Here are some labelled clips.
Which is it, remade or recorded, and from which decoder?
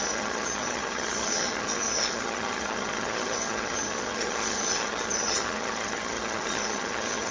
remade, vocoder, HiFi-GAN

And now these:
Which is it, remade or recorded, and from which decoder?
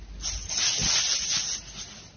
recorded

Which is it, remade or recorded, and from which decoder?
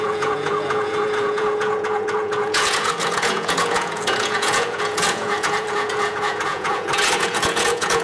remade, vocoder, Vocos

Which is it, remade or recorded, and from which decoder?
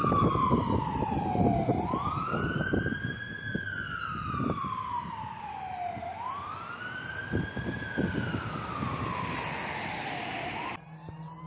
recorded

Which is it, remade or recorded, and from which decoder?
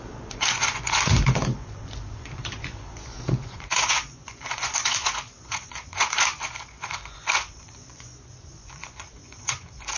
remade, vocoder, Vocos